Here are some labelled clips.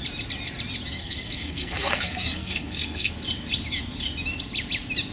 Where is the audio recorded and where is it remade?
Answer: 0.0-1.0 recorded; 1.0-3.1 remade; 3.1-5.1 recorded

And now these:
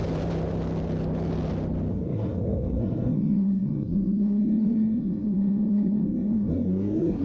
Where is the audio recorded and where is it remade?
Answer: 0.0-1.9 recorded; 1.9-7.2 remade

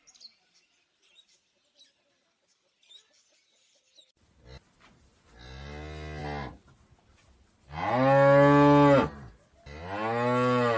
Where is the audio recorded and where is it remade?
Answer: 0.0-10.8 recorded

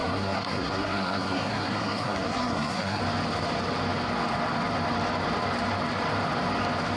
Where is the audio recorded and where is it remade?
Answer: 0.0-3.0 remade; 3.0-7.0 recorded

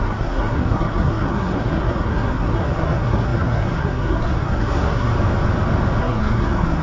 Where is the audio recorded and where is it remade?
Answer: 0.0-5.1 remade; 5.1-6.0 recorded; 6.0-6.8 remade

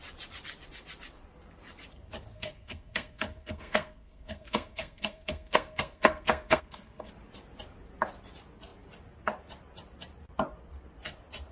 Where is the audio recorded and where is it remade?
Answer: 0.0-2.3 recorded; 2.3-7.1 remade; 7.1-11.5 recorded

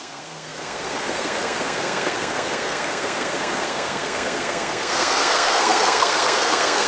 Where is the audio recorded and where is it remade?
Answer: 0.0-6.9 remade

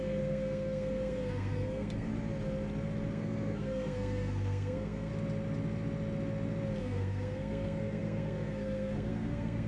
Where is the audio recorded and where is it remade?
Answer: 0.0-2.1 remade; 2.1-3.1 recorded; 3.1-5.1 remade; 5.1-6.8 recorded; 6.8-9.7 remade